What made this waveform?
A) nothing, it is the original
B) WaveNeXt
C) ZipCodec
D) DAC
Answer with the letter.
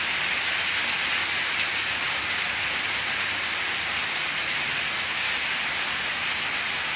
A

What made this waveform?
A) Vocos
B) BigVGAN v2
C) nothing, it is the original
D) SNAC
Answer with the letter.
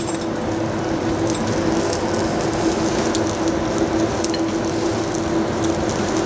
C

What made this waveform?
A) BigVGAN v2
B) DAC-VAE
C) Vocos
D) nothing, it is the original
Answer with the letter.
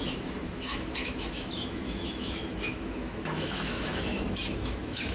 B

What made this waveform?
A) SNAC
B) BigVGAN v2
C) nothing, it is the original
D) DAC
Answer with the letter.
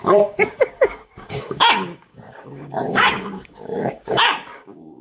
D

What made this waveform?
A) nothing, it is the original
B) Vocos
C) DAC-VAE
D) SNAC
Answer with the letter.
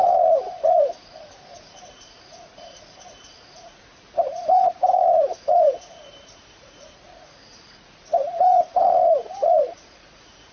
B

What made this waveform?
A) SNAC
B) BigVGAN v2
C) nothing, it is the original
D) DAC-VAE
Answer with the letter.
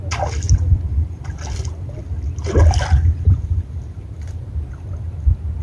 C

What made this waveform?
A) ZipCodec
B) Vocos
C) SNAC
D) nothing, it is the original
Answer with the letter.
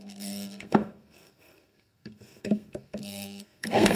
C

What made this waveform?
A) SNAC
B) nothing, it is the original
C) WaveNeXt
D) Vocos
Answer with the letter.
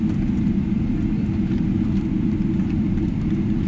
B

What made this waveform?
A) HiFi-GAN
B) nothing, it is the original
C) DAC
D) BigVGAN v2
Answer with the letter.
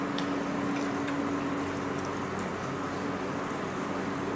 B